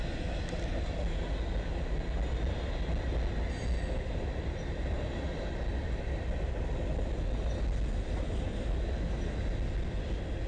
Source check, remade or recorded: recorded